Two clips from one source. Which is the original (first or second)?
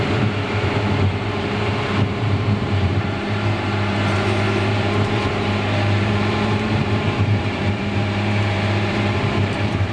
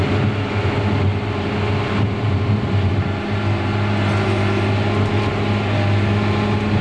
second